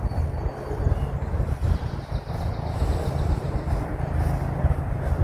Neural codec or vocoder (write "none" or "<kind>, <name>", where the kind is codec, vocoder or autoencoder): none